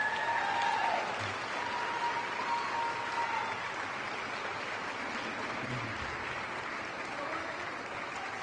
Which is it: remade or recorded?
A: recorded